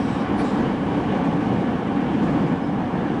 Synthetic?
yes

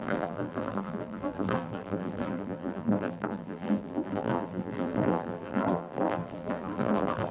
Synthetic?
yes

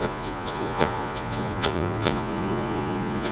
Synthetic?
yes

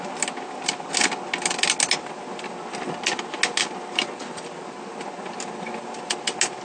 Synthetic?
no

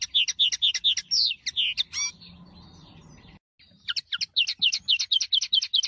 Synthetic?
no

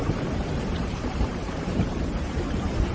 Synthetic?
yes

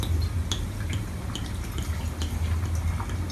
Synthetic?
no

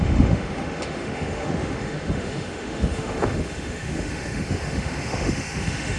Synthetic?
yes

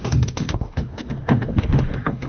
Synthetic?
yes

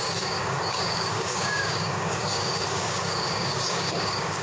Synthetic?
yes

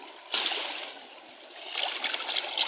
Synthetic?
no